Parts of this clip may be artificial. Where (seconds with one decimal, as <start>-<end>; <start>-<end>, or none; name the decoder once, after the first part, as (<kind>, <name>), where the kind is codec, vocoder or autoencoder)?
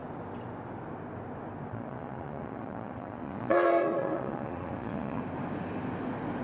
1.7-5.2 (vocoder, Vocos)